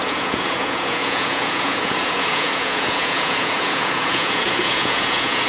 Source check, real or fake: fake